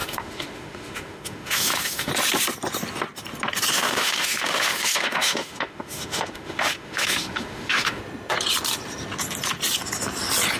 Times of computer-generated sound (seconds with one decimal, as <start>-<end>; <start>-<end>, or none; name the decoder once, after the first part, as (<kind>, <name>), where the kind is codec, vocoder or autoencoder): 0.0-2.1 (autoencoder, DAC-VAE); 3.7-8.0